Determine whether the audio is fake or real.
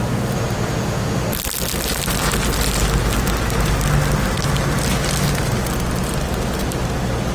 real